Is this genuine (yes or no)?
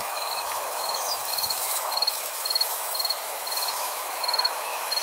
no